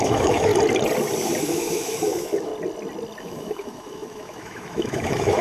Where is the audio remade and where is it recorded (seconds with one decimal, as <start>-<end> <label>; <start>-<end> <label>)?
0.0-0.5 remade; 0.5-1.4 recorded; 1.4-2.5 remade; 2.5-3.2 recorded; 3.2-5.4 remade